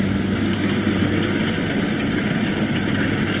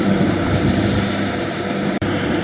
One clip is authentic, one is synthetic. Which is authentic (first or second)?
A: first